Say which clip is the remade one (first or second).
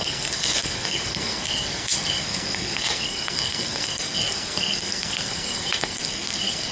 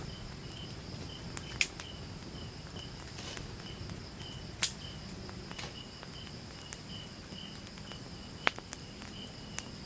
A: first